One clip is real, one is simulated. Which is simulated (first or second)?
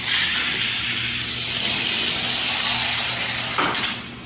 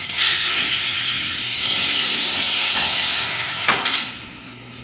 second